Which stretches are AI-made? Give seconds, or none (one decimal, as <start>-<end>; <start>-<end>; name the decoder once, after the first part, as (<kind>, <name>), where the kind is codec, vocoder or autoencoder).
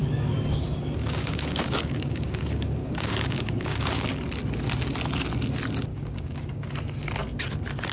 0.0-4.1 (codec, DAC); 5.9-6.7